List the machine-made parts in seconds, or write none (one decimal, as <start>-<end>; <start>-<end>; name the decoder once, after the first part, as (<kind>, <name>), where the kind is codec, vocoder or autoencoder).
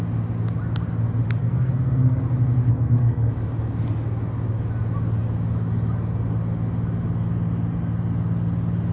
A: 1.4-2.2 (codec, SNAC); 2.7-3.3